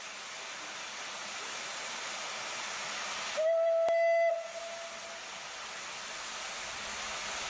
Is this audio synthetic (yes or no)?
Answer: no